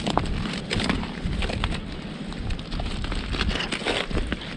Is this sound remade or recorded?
recorded